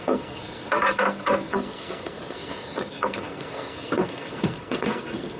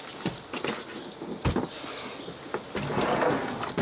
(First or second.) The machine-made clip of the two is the first